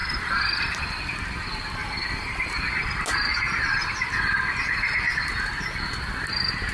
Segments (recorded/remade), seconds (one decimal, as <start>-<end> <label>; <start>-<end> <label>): 0.0-1.0 remade; 1.0-1.8 recorded; 1.8-2.6 remade; 2.6-6.7 recorded